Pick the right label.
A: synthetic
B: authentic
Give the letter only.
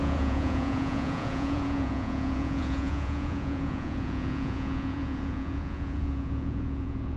A